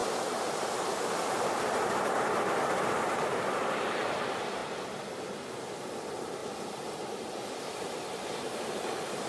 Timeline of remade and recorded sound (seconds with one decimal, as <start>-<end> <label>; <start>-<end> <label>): 0.0-4.6 remade; 4.6-5.2 recorded; 5.2-6.4 remade; 6.4-7.6 recorded; 7.6-9.3 remade

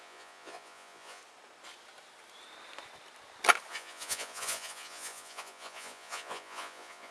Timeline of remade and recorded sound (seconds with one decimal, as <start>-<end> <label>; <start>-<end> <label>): 0.0-1.2 remade; 1.2-3.7 recorded; 3.7-7.1 remade

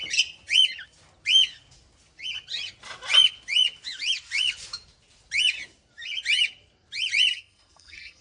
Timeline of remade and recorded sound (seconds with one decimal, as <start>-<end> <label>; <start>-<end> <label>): 0.0-7.3 recorded; 7.3-8.2 remade

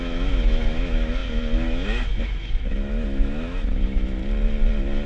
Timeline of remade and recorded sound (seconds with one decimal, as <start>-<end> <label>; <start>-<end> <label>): 0.0-4.2 remade; 4.2-5.1 recorded

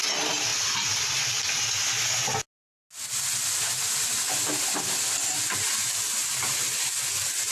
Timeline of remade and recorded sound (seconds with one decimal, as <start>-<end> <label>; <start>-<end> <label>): 0.0-7.5 recorded